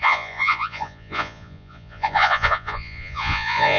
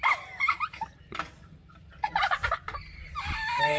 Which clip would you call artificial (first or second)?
first